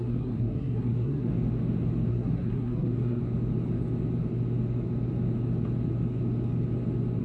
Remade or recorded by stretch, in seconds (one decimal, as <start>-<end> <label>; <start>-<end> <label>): 0.0-1.3 remade; 1.3-2.1 recorded; 2.1-3.2 remade; 3.2-7.2 recorded